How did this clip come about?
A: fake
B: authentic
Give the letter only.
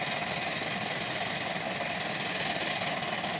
B